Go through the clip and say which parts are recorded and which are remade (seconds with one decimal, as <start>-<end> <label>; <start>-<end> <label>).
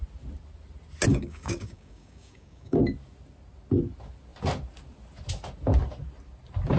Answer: 0.0-1.1 recorded; 1.1-2.8 remade; 2.8-6.8 recorded